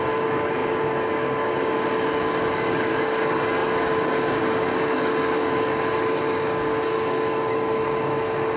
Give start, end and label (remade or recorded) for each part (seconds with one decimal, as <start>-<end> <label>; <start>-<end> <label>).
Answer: 0.0-8.6 remade